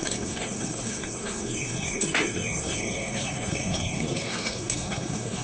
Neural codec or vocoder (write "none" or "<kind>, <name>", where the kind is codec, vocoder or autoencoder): codec, SNAC